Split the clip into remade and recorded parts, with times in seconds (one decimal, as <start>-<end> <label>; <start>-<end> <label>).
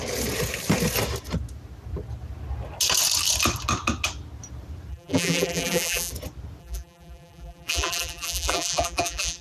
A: 0.0-4.9 recorded; 4.9-6.1 remade; 6.1-6.6 recorded; 6.6-9.4 remade